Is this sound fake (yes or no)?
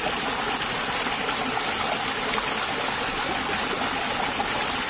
no